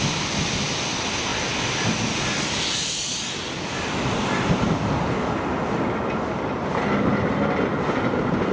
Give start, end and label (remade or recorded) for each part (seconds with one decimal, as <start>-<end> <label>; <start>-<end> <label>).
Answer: 0.0-8.5 recorded